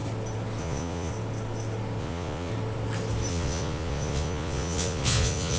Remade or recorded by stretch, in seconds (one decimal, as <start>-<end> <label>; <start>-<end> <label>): 0.0-0.6 recorded; 0.6-1.1 remade; 1.1-2.0 recorded; 2.0-2.5 remade; 2.5-3.3 recorded; 3.3-5.6 remade